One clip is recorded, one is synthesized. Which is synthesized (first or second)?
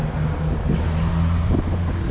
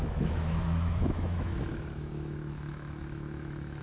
second